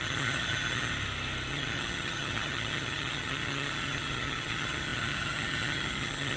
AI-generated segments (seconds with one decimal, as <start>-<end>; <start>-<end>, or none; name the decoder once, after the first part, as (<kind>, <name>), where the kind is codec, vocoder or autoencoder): 0.0-0.9 (vocoder, HiFi-GAN); 1.5-6.4